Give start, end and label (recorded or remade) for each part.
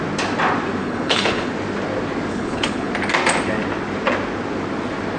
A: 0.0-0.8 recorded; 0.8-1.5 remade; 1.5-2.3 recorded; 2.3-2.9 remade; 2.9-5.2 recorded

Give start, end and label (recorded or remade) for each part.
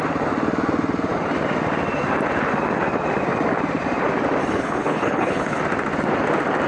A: 0.0-4.4 recorded; 4.4-5.6 remade; 5.6-6.7 recorded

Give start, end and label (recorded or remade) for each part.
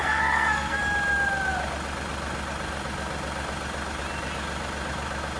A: 0.0-0.8 remade; 0.8-5.4 recorded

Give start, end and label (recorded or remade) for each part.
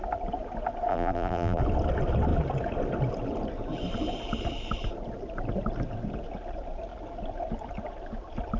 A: 0.0-0.9 recorded; 0.9-1.6 remade; 1.6-8.6 recorded